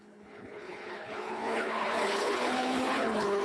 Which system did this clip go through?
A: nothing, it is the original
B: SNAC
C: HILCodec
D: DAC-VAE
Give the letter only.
C